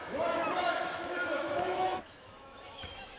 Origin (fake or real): fake